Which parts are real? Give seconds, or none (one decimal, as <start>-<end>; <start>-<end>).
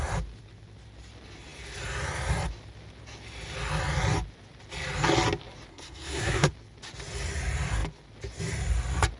0.0-5.7; 6.5-9.2